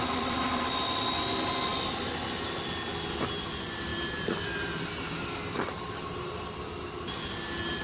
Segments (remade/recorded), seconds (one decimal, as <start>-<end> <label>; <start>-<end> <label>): 0.0-1.7 recorded; 1.7-2.4 remade; 2.4-3.9 recorded; 3.9-6.4 remade; 6.4-7.8 recorded